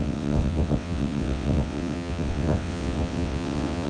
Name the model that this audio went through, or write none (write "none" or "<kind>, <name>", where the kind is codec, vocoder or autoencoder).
vocoder, WaveNeXt